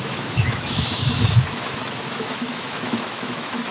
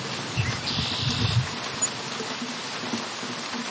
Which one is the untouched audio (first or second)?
second